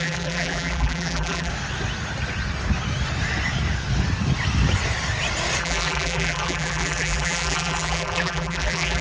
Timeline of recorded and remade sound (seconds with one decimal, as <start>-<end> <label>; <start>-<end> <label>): 0.0-1.5 remade; 1.5-5.6 recorded; 5.6-9.0 remade